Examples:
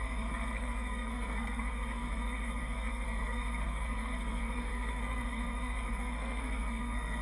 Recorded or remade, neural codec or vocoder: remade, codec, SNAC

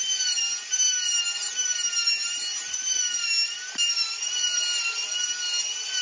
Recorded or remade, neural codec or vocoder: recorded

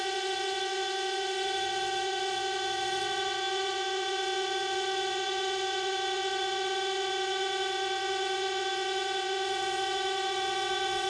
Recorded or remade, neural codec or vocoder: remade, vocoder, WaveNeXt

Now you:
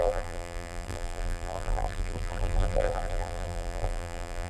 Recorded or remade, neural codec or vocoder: remade, vocoder, BigVGAN v2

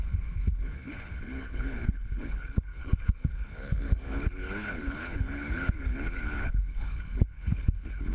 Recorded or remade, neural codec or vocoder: remade, codec, HILCodec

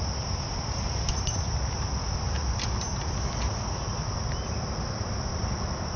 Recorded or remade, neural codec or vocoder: recorded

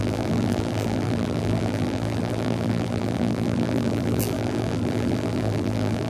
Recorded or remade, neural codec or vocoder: remade, vocoder, BigVGAN v2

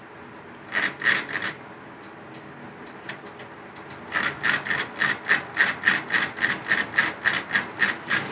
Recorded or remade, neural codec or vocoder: recorded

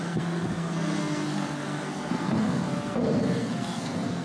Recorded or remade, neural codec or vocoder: remade, codec, SNAC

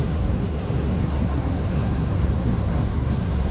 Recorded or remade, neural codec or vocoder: remade, codec, SNAC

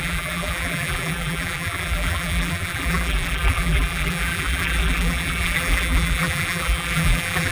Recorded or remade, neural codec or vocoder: remade, vocoder, BigVGAN v2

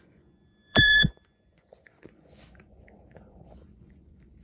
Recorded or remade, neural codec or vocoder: remade, vocoder, Vocos